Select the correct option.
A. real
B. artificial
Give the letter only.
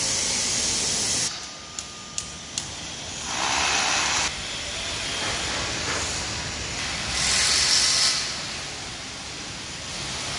A